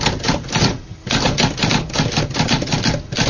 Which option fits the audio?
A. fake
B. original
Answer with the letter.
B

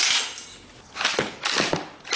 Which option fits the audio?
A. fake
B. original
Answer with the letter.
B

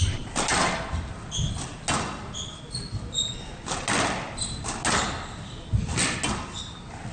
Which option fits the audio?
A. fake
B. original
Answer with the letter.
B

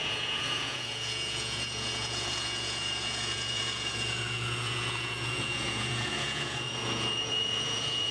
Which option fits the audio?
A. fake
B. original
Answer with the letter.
A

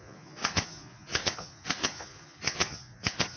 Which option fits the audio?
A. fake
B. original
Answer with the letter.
A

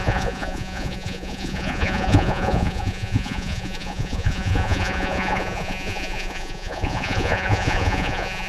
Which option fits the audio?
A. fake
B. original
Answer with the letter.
A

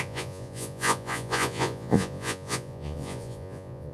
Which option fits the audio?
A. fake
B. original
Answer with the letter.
A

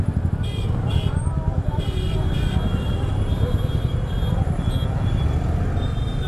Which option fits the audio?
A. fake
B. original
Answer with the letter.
B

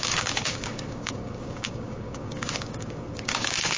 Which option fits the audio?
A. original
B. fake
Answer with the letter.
B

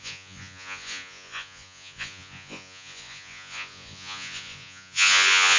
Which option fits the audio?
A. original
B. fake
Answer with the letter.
B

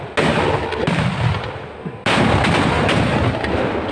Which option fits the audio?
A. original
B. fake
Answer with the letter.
A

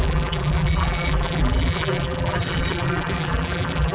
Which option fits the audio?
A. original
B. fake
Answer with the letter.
B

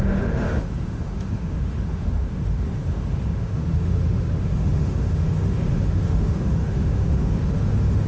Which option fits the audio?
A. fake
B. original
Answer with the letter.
A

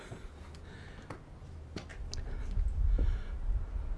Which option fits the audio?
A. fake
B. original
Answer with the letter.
B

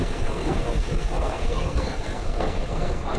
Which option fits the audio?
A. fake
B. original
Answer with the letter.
A